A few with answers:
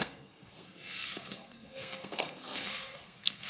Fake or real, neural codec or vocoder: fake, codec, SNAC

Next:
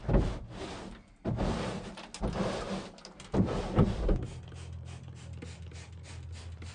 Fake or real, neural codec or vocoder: real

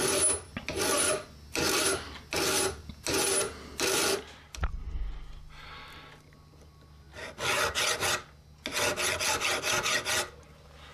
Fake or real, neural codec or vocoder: real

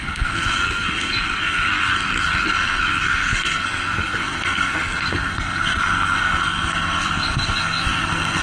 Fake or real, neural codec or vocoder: fake, codec, SNAC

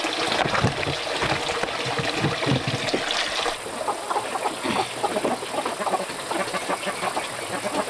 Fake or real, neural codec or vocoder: real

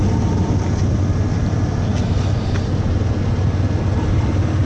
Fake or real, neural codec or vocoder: real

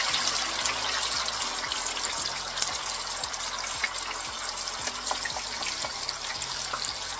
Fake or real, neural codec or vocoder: real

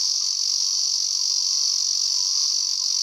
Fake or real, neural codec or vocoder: real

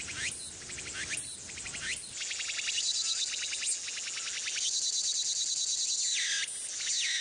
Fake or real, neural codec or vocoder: real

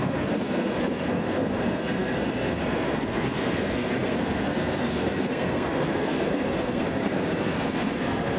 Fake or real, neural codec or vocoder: fake, codec, SNAC